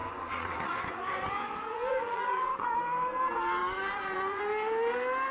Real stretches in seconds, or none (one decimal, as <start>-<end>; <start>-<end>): 2.8-3.6; 4.4-5.3